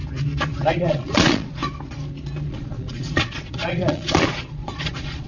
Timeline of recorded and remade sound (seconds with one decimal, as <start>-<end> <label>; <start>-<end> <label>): 0.0-0.7 recorded; 0.7-1.6 remade; 1.6-2.5 recorded; 2.5-5.3 remade